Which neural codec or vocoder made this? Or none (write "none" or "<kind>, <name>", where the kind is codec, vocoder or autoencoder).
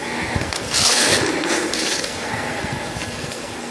codec, SNAC